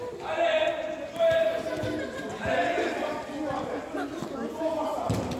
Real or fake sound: real